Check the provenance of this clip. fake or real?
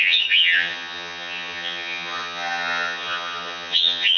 fake